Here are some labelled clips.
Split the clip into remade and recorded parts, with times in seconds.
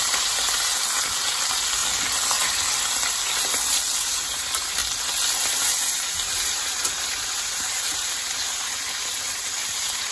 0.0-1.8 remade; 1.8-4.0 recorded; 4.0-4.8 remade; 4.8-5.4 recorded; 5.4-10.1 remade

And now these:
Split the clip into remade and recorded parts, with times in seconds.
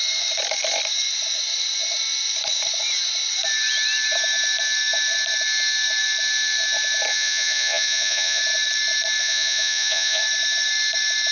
0.0-7.1 recorded; 7.1-8.4 remade; 8.4-9.2 recorded; 9.2-10.2 remade; 10.2-11.3 recorded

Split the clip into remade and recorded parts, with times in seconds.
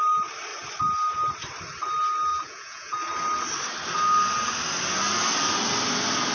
0.0-2.3 recorded; 2.3-3.0 remade; 3.0-6.3 recorded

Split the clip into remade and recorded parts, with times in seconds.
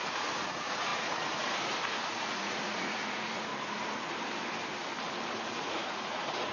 0.0-3.5 remade; 3.5-5.3 recorded; 5.3-6.5 remade